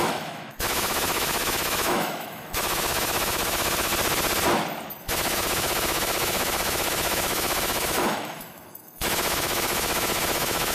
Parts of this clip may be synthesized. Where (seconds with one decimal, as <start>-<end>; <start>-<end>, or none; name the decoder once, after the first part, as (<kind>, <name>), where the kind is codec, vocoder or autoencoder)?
0.0-3.9 (autoencoder, DAC-VAE); 5.0-10.7

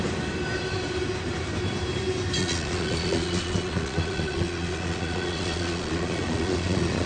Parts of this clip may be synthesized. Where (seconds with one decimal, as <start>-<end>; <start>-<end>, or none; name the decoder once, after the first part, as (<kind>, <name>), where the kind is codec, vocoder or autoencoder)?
2.4-7.1 (vocoder, Vocos)

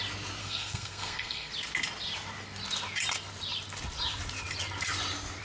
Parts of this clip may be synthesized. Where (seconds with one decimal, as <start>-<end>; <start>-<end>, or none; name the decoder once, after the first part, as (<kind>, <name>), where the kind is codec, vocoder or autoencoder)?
0.4-1.5 (codec, SNAC)

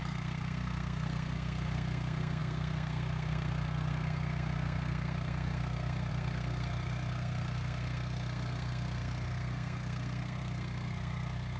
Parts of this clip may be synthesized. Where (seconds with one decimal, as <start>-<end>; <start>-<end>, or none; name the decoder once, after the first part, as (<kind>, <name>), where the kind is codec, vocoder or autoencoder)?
0.0-11.6 (codec, SNAC)

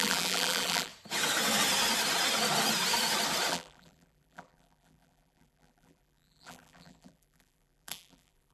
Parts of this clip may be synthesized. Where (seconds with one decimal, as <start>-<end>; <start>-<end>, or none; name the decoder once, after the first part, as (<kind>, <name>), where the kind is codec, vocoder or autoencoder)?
0.0-0.9 (vocoder, BigVGAN v2); 3.5-8.5

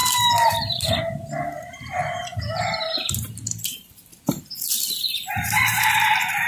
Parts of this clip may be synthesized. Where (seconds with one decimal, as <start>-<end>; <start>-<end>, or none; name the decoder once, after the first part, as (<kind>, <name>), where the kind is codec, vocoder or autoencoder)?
1.0-2.2 (vocoder, BigVGAN v2); 2.8-4.1; 5.3-6.5

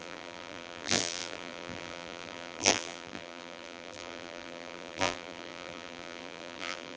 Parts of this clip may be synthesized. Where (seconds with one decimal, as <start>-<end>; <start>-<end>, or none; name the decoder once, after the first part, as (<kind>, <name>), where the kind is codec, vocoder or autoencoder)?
0.0-7.0 (vocoder, BigVGAN v2)